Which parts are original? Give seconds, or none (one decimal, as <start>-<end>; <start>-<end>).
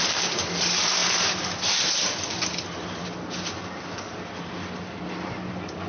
0.0-5.9